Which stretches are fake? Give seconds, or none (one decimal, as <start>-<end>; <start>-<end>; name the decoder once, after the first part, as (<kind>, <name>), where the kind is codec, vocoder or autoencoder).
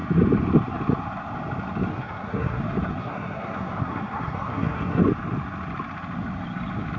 1.9-2.6 (codec, SNAC); 3.0-5.0